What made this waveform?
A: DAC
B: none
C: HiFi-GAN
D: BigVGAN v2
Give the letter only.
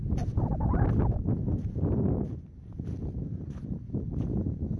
B